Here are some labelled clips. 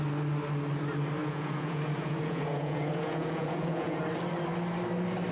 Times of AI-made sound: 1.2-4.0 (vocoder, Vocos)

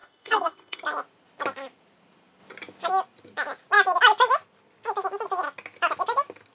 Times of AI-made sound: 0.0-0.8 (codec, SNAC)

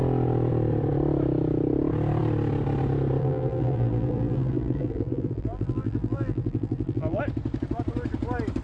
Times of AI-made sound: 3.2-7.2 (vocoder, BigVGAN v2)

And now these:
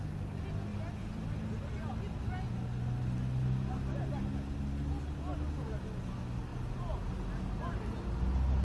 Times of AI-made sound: none